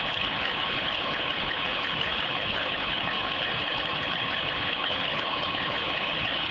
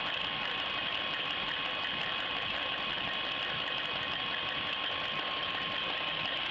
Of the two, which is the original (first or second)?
second